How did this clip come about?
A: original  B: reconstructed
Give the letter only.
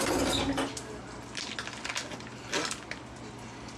A